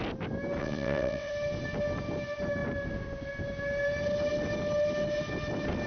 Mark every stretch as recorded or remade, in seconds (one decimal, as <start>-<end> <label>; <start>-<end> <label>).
0.0-0.6 recorded; 0.6-1.3 remade; 1.3-5.9 recorded